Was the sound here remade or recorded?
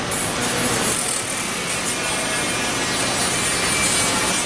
recorded